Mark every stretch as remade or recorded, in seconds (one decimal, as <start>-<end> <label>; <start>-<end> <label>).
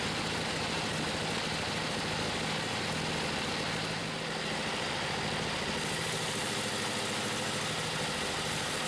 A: 0.0-8.9 recorded